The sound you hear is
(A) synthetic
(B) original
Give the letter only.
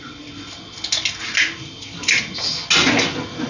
B